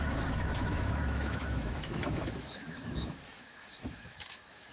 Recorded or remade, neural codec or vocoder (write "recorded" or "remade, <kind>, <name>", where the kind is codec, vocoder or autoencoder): remade, autoencoder, DAC-VAE